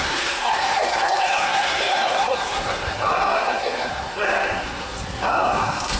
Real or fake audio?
fake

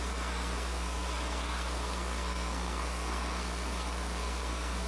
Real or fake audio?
fake